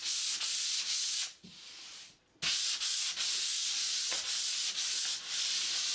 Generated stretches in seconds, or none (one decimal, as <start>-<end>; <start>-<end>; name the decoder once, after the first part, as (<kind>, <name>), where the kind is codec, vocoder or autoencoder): none